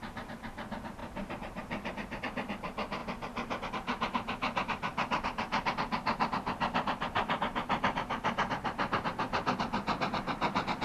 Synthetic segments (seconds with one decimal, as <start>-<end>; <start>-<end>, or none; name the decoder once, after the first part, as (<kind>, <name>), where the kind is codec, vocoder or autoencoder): 1.0-2.2 (vocoder, BigVGAN v2); 3.0-3.7; 4.9-5.7